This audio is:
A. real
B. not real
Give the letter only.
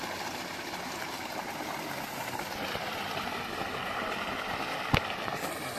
A